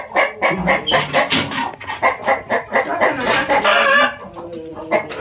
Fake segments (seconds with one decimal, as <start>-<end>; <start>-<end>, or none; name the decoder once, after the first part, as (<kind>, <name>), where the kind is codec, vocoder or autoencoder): none